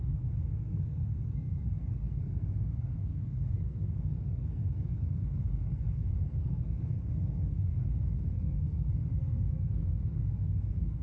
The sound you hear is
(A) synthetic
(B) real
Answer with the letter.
A